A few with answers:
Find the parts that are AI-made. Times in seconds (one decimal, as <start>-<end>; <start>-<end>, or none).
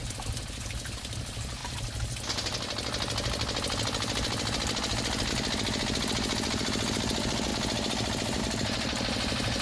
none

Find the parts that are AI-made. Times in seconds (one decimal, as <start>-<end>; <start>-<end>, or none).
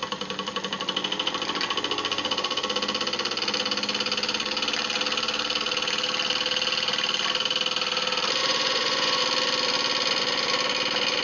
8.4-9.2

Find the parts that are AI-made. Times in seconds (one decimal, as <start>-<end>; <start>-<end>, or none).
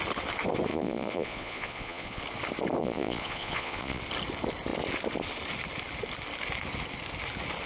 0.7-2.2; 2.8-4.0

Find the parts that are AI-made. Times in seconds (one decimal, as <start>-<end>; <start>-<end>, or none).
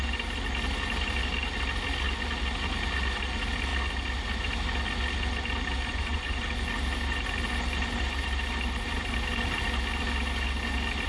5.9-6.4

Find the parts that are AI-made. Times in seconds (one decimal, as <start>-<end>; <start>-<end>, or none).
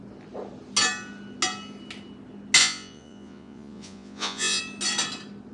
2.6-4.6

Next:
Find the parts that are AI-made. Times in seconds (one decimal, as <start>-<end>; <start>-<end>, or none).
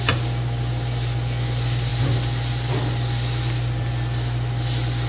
none